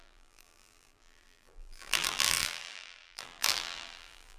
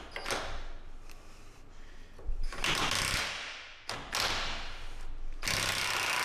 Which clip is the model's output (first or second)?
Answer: first